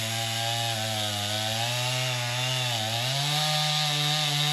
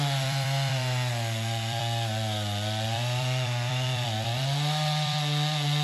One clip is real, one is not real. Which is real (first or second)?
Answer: first